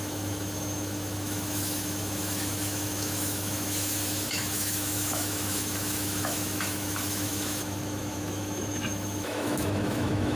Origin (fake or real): fake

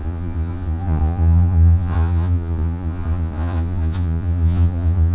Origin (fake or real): fake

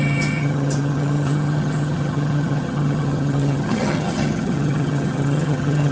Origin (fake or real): fake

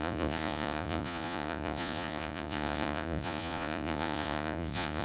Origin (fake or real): fake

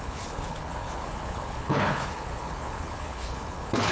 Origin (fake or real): fake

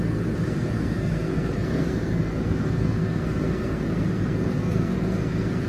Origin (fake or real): fake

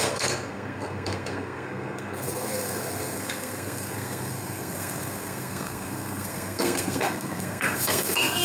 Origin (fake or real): fake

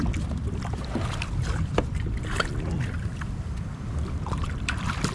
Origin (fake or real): fake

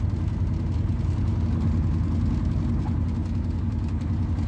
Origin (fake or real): real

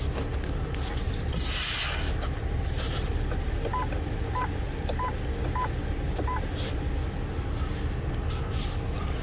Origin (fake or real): real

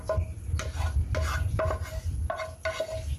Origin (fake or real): real